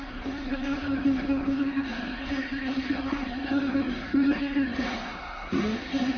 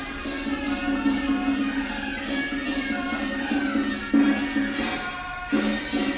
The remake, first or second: first